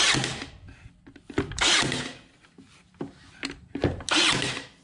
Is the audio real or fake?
real